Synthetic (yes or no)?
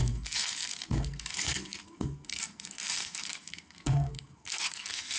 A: yes